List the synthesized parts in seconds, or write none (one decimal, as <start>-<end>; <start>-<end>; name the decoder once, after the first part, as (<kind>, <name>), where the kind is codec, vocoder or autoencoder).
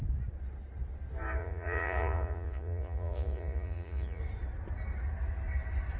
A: 1.4-4.2 (vocoder, Vocos)